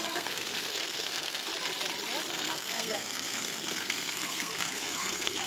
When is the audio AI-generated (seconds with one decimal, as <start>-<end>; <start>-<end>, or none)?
0.0-1.5; 2.3-5.5